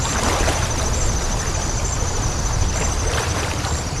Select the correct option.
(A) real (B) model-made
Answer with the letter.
B